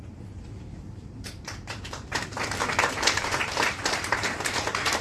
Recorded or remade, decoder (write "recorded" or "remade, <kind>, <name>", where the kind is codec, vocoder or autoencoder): remade, vocoder, BigVGAN v2